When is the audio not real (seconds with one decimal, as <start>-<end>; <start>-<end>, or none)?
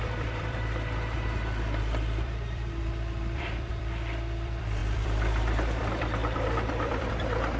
0.0-7.6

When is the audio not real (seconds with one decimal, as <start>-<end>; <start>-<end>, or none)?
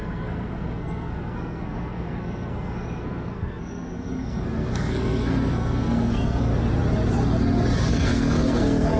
0.0-6.5; 7.9-9.0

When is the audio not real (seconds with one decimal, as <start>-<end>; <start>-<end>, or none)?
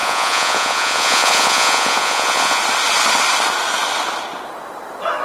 0.0-2.6